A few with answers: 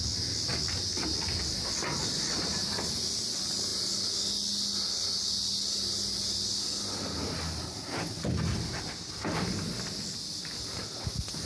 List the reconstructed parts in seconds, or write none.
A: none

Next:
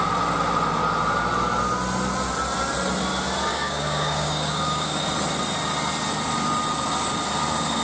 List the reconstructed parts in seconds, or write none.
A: 3.5-5.0

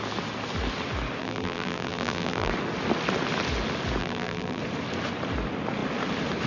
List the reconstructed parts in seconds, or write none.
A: 1.2-2.5; 4.0-4.6

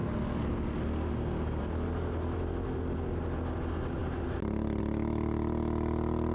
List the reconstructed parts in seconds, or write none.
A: none

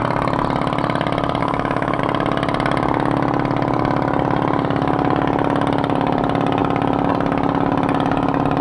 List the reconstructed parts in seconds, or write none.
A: 1.4-2.0